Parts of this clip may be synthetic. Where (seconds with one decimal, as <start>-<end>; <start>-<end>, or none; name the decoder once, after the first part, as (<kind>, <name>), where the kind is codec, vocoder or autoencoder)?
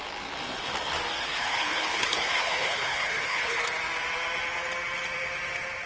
1.2-3.6 (codec, HILCodec)